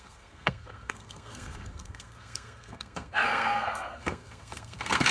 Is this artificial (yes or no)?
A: yes